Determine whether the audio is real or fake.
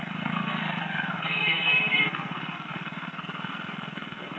fake